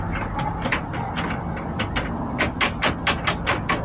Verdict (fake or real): real